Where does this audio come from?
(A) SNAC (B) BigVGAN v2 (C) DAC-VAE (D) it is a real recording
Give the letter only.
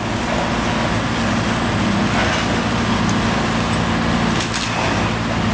D